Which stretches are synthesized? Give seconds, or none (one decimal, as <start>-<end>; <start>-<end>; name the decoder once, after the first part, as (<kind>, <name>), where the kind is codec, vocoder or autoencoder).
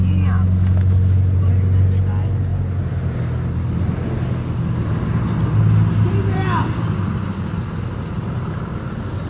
none